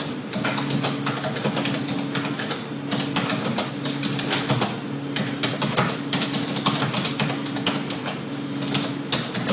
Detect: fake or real real